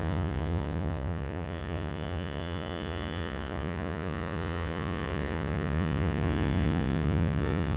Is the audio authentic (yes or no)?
no